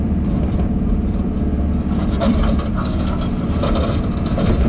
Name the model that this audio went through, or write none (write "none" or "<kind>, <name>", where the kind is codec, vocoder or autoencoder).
vocoder, BigVGAN v2